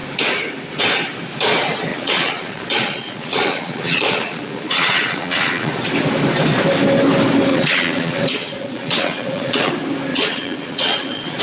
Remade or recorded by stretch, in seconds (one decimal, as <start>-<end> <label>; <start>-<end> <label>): 0.0-1.9 recorded; 1.9-5.7 remade; 5.7-7.5 recorded; 7.5-9.7 remade; 9.7-10.1 recorded; 10.1-11.4 remade